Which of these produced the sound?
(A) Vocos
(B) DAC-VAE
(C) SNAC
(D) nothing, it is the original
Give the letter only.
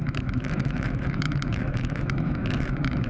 B